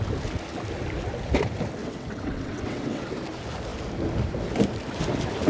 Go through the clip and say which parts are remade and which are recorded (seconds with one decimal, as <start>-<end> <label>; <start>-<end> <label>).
0.0-1.8 recorded; 1.8-3.0 remade; 3.0-5.5 recorded